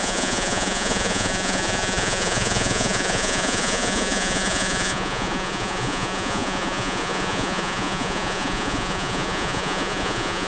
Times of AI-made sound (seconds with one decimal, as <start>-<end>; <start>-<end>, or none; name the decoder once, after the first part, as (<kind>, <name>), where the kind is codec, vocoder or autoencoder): 0.0-10.5 (vocoder, Vocos)